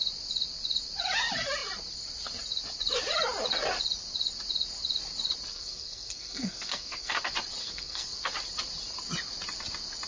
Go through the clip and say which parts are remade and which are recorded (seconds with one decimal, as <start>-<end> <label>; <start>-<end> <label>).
0.0-5.5 recorded; 5.5-7.1 remade; 7.1-7.6 recorded; 7.6-8.2 remade; 8.2-10.1 recorded